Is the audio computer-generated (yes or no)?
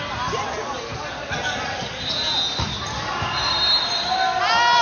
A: no